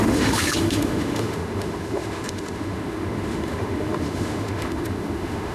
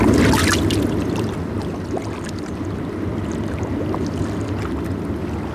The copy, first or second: first